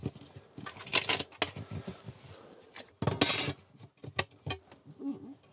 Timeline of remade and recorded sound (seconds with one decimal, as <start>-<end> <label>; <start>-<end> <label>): 0.0-5.5 recorded